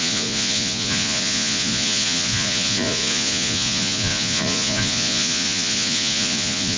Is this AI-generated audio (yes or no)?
yes